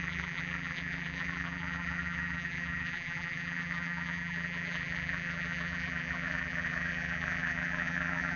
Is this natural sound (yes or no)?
no